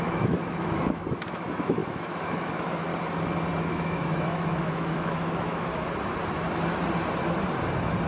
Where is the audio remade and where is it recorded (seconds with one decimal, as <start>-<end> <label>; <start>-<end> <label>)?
0.0-2.9 remade; 2.9-3.6 recorded; 3.6-5.7 remade; 5.7-8.1 recorded